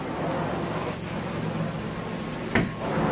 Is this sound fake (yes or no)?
no